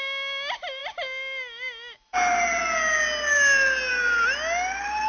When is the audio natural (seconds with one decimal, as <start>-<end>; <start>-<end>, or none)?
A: 0.0-5.1